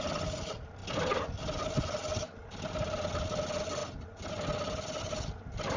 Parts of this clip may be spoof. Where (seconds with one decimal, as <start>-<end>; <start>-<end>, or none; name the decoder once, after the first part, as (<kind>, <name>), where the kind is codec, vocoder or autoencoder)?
none